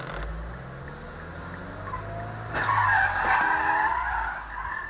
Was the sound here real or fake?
real